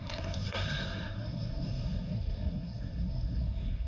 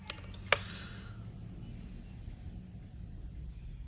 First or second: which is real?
second